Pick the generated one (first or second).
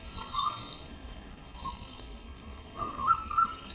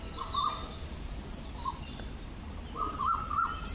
first